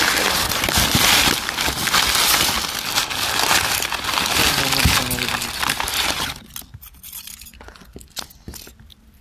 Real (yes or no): yes